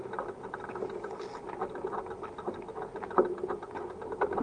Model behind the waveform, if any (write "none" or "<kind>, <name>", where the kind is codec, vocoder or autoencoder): none